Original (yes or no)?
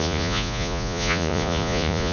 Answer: no